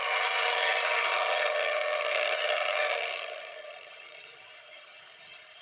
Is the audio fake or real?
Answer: fake